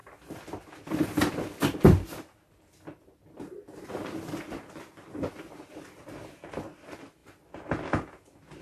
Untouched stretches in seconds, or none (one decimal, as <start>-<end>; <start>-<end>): 0.0-8.6